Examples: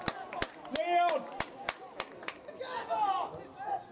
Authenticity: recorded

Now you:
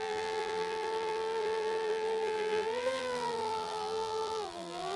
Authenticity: remade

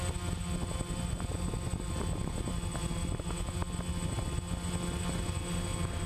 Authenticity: recorded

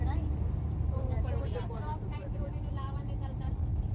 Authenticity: remade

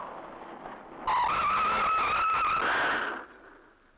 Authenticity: recorded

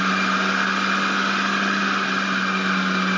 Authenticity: recorded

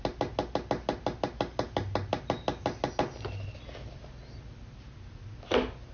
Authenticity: recorded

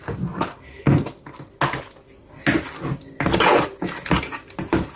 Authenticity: recorded